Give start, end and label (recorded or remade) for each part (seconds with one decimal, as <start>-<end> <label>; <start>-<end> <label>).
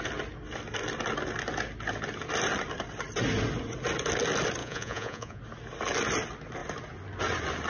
0.0-4.6 recorded; 4.6-5.4 remade; 5.4-7.7 recorded